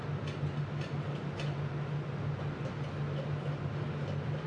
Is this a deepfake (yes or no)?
no